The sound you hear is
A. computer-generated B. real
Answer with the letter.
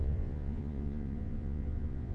A